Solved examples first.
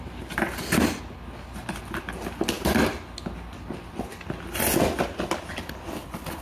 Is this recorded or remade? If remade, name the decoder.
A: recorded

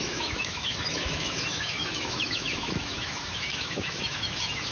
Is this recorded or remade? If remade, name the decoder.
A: remade, autoencoder, DAC-VAE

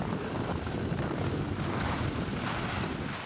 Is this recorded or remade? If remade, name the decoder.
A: recorded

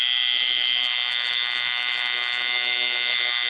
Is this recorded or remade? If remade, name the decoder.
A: remade, autoencoder, DAC-VAE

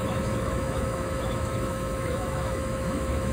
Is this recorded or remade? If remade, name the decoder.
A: remade, autoencoder, DAC-VAE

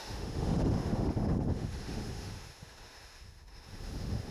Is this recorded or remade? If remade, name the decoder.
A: remade, autoencoder, DAC-VAE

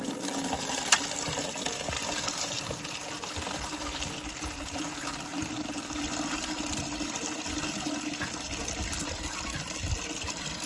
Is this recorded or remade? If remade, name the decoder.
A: recorded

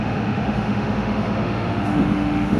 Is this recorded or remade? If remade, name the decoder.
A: remade, autoencoder, DAC-VAE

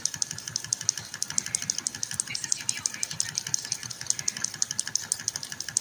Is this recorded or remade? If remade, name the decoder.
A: recorded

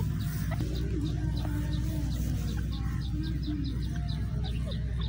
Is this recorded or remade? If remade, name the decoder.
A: recorded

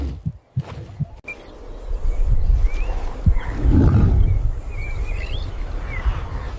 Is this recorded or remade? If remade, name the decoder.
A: recorded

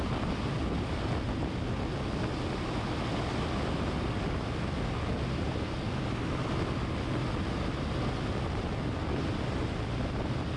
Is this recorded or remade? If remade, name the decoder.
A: recorded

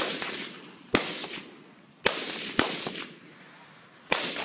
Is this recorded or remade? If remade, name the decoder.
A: recorded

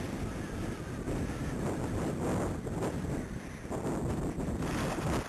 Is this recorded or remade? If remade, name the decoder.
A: recorded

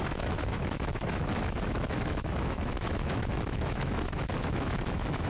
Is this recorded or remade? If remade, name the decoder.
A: remade, autoencoder, DAC-VAE